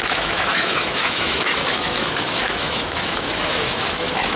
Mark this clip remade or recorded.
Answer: remade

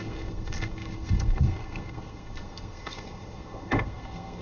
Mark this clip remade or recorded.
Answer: remade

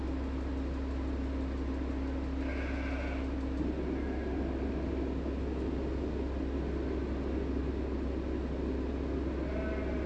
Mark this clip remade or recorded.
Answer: recorded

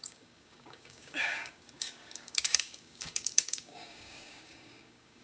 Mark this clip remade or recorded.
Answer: remade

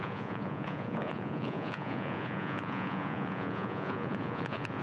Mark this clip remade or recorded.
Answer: remade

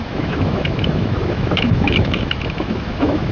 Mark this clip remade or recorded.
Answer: remade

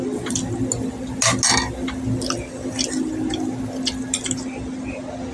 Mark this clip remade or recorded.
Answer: recorded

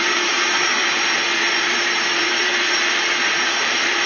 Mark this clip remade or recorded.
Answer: remade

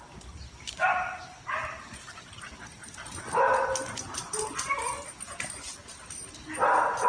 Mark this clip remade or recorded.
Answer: recorded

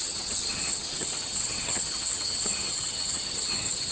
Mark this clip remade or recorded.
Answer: remade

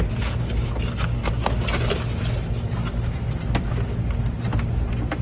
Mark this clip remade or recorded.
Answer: recorded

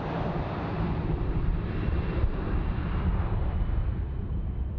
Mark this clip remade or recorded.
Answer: recorded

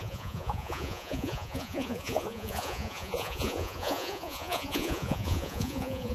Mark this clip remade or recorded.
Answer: remade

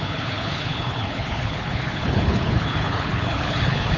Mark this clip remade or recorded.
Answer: remade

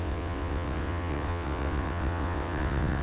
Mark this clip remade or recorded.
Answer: remade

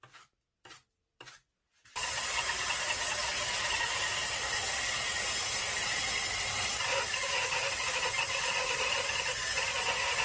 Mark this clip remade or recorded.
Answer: recorded